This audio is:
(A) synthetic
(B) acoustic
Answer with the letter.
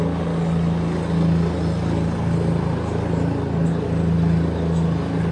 B